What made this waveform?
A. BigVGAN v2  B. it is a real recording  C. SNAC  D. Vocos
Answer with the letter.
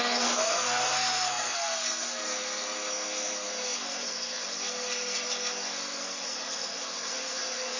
C